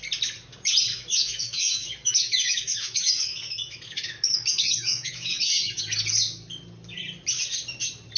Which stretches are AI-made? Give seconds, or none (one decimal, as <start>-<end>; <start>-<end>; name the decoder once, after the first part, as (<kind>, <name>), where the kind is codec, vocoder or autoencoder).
0.9-5.8 (autoencoder, DAC-VAE)